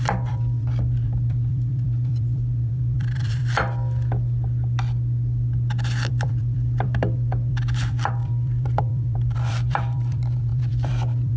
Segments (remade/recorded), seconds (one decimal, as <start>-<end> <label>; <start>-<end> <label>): 0.0-3.4 remade; 3.4-6.1 recorded; 6.1-11.4 remade